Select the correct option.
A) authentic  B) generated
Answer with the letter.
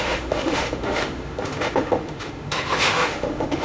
B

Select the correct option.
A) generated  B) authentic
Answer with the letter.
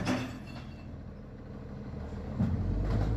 B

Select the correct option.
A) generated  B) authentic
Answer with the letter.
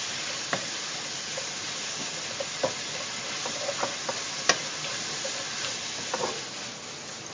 B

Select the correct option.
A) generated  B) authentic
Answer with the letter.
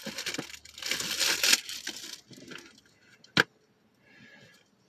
B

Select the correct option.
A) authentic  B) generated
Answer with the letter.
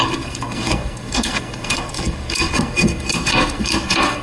B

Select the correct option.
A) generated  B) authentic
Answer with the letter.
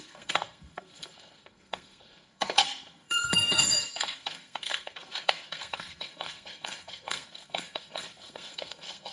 A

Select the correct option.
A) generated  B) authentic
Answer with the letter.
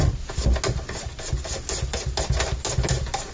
B